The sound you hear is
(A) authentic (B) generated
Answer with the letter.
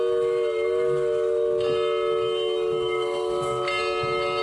A